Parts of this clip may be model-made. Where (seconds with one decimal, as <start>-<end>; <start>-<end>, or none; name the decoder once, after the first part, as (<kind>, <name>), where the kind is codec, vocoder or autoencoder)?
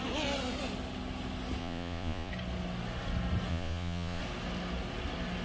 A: 1.6-2.3 (vocoder, Vocos); 3.5-4.2